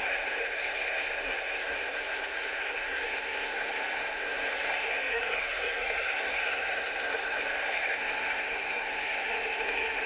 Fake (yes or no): yes